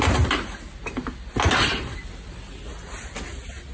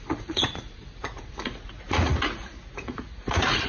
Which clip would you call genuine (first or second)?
first